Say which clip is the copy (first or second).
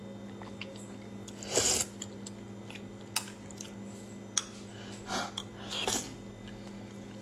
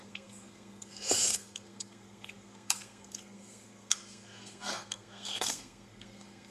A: second